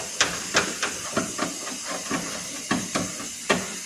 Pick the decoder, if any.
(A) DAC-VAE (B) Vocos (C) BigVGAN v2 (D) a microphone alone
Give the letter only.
D